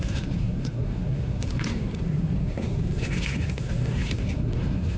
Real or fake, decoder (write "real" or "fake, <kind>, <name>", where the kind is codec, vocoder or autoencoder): fake, codec, SNAC